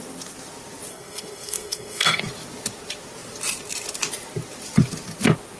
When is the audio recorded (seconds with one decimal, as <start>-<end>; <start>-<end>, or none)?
0.0-0.9; 2.2-5.6